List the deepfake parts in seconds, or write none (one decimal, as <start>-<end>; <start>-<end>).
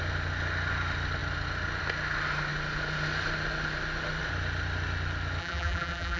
5.4-6.2